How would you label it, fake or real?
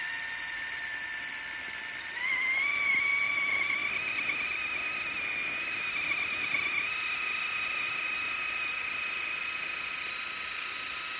real